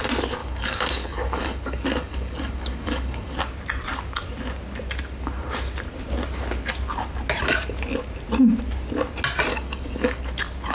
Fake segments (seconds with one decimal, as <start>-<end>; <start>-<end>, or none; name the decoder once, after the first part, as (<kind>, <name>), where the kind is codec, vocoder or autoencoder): 0.4-3.4 (codec, DAC); 9.5-10.2